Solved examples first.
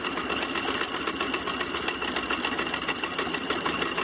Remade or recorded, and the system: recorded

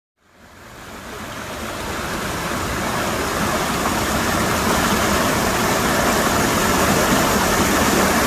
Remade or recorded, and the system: recorded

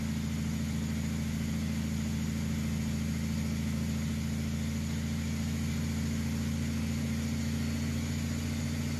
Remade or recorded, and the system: recorded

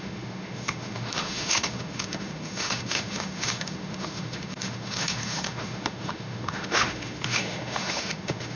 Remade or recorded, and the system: remade, autoencoder, DAC-VAE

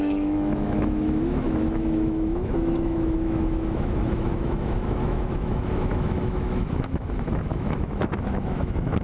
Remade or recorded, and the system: remade, autoencoder, DAC-VAE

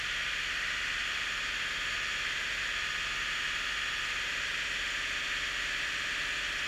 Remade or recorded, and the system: recorded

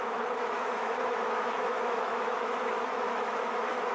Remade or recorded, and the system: remade, autoencoder, DAC-VAE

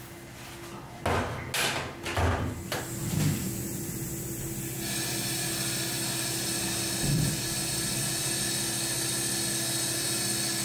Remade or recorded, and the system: recorded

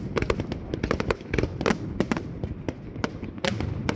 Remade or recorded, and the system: recorded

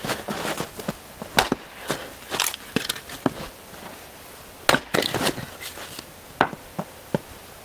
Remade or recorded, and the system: recorded